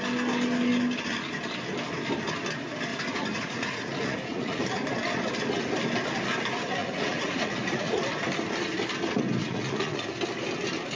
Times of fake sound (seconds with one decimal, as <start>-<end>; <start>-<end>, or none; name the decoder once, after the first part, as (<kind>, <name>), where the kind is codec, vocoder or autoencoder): 2.9-4.6 (vocoder, Vocos); 6.8-8.0; 9.4-10.1